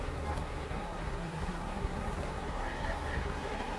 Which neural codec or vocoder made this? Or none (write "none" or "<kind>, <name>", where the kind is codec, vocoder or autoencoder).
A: codec, SNAC